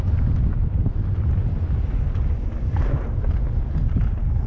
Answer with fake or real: real